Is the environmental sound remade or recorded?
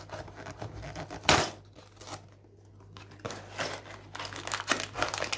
recorded